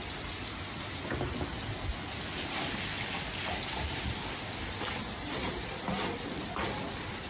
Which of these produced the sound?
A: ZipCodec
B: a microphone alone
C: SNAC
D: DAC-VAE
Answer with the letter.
B